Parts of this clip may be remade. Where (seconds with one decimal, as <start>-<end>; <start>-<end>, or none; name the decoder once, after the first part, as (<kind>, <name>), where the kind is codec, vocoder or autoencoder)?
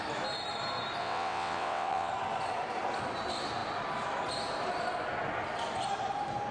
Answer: 1.0-2.1 (vocoder, WaveNeXt)